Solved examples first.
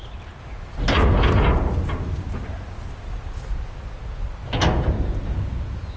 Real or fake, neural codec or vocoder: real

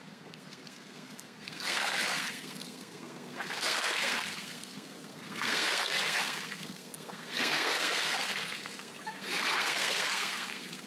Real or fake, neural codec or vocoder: fake, codec, SNAC